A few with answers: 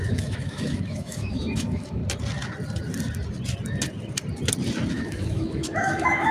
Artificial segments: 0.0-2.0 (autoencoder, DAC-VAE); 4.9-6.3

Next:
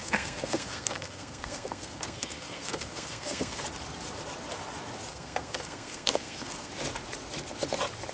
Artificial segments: 0.0-3.6 (codec, SNAC); 5.1-6.7

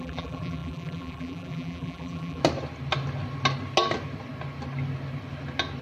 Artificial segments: 0.0-2.4 (vocoder, BigVGAN v2)

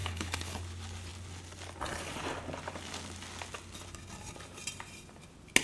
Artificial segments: 0.0-0.6 (codec, HILCodec)

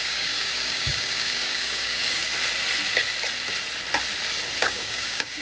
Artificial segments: 0.0-2.3 (codec, DAC); 4.6-5.4

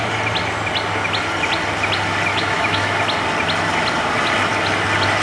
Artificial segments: 2.3-3.0 (autoencoder, DAC-VAE)

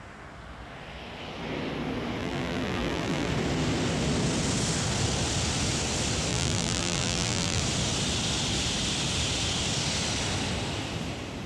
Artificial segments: 2.2-3.3 (vocoder, BigVGAN v2); 6.3-7.6